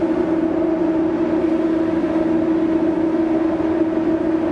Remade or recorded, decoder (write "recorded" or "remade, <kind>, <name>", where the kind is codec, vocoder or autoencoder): recorded